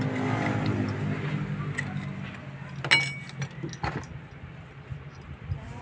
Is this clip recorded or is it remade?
recorded